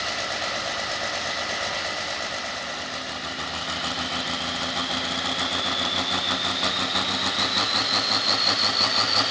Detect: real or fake real